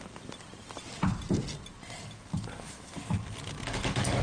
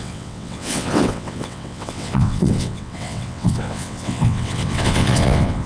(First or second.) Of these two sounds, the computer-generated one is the second